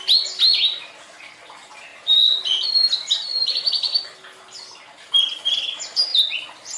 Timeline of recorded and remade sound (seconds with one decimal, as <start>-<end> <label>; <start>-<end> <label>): 0.0-1.9 recorded; 1.9-4.4 remade; 4.4-6.1 recorded; 6.1-6.8 remade